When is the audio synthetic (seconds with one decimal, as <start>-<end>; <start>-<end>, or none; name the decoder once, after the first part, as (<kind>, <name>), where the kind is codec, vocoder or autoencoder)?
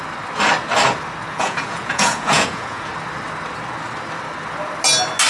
1.3-2.9 (vocoder, Vocos)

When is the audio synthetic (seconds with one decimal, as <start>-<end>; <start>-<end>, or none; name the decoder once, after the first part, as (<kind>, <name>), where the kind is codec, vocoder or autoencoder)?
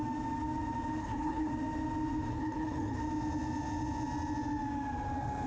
1.0-1.5 (codec, HILCodec); 2.3-3.0